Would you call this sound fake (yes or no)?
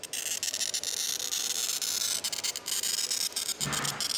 no